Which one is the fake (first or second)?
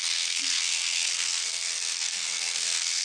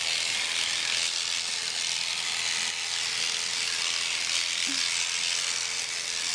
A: first